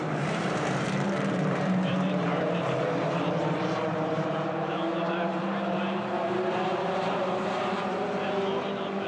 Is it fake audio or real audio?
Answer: fake